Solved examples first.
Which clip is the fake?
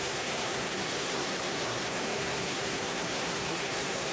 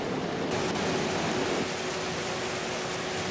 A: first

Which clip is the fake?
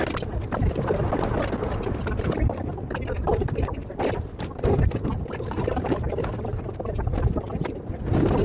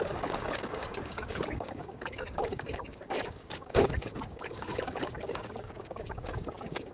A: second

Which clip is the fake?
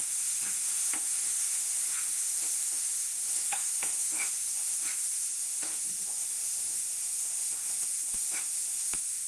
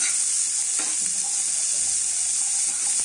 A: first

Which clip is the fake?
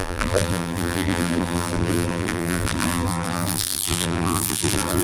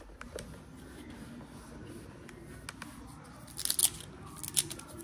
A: first